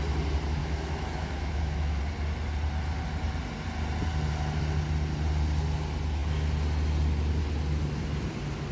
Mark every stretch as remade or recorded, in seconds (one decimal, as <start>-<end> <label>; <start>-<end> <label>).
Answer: 0.0-0.6 recorded; 0.6-2.0 remade; 2.0-8.7 recorded